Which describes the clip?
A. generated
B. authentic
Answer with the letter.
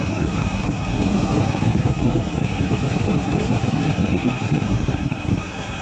A